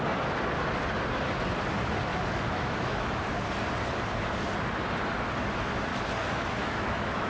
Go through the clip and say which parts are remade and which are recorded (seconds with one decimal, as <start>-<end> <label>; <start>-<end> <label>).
0.0-2.1 recorded; 2.1-3.2 remade; 3.2-5.9 recorded; 5.9-7.3 remade